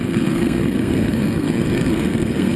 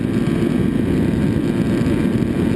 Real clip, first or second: second